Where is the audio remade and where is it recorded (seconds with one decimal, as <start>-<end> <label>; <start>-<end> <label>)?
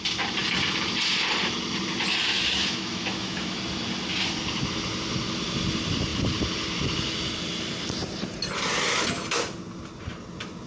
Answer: 0.0-2.3 recorded; 2.3-3.6 remade; 3.6-10.7 recorded